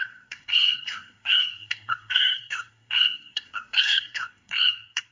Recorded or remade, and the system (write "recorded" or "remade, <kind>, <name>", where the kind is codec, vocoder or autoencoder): remade, codec, SNAC